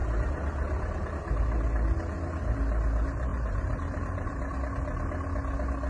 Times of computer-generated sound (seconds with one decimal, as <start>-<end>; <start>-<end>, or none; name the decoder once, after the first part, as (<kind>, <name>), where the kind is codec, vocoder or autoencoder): 3.3-4.6 (vocoder, BigVGAN v2)